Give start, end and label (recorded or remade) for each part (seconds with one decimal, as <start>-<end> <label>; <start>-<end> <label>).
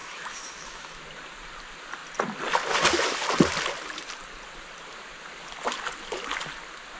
0.0-1.0 remade; 1.0-7.0 recorded